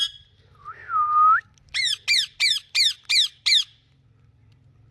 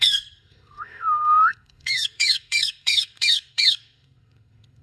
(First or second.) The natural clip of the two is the first